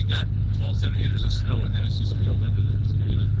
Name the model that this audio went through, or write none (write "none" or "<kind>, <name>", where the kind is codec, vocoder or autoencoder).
codec, HILCodec